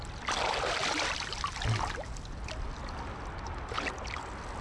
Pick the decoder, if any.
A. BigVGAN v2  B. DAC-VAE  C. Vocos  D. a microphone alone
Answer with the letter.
D